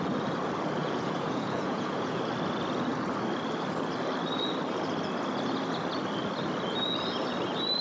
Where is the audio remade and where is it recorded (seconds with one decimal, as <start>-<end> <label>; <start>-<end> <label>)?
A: 0.0-0.8 recorded; 0.8-2.2 remade; 2.2-7.8 recorded